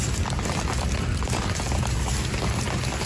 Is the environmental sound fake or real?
real